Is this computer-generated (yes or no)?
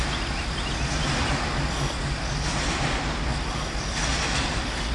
no